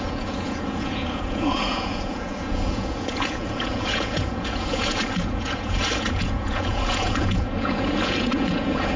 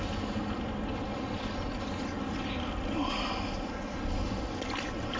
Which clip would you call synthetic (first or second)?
first